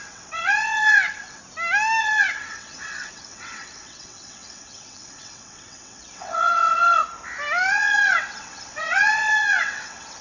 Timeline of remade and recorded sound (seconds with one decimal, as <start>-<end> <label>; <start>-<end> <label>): 0.0-1.4 remade; 1.4-2.0 recorded; 2.0-7.0 remade; 7.0-7.7 recorded; 7.7-10.2 remade